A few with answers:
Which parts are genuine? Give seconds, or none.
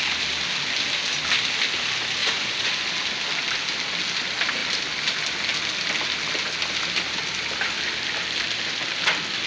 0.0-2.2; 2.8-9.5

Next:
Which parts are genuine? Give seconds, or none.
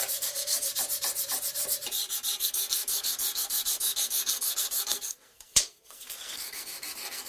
0.7-2.4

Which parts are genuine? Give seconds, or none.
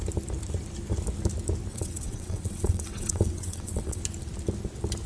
0.0-1.7; 4.0-5.1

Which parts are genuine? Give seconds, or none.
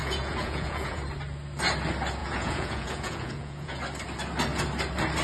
1.0-2.2; 3.8-5.2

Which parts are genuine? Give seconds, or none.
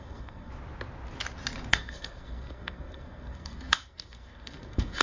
0.5-1.7